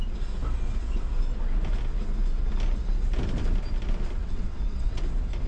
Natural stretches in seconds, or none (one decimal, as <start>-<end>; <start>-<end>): 0.0-4.2; 5.0-5.5